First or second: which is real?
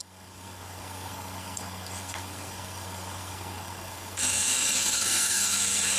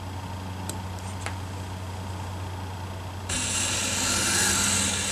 second